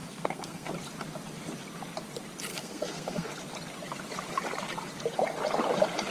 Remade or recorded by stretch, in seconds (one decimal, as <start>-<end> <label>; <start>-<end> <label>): 0.0-0.7 remade; 0.7-2.5 recorded; 2.5-3.3 remade; 3.3-6.1 recorded